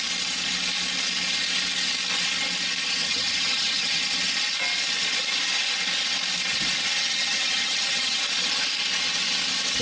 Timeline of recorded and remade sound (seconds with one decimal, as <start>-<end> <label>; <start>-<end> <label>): 0.0-3.0 recorded; 3.0-4.0 remade; 4.0-7.0 recorded; 7.0-8.2 remade; 8.2-9.8 recorded